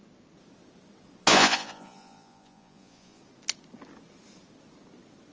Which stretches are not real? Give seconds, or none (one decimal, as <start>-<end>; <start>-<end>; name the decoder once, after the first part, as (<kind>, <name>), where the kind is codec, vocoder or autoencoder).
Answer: 1.3-3.2 (vocoder, Vocos)